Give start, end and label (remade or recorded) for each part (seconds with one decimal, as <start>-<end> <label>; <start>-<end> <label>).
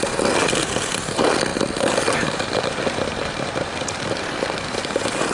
0.0-5.3 recorded